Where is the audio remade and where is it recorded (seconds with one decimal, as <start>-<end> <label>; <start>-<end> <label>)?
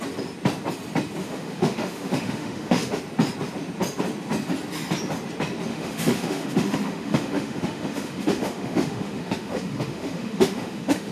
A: 0.0-1.2 recorded; 1.2-3.0 remade; 3.0-5.7 recorded; 5.7-11.1 remade